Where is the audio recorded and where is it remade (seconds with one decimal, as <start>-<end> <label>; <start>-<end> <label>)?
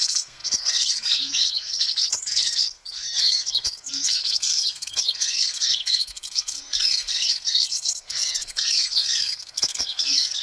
0.0-10.4 remade